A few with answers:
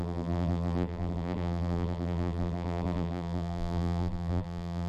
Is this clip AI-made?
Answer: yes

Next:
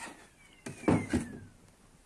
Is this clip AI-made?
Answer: no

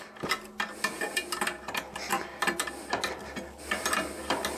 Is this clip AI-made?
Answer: no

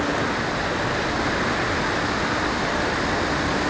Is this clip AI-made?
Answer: no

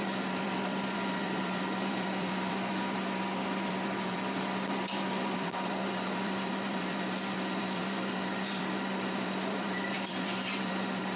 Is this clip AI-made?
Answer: yes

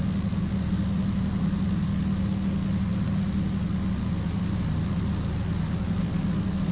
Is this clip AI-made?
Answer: no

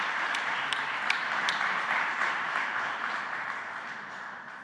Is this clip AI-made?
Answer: yes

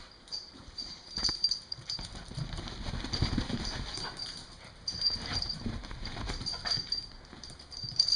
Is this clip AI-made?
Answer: yes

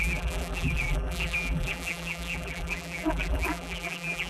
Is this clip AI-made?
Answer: yes